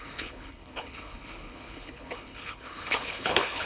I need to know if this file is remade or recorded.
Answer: remade